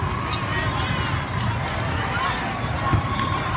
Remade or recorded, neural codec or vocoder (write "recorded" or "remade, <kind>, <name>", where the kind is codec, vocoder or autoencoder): recorded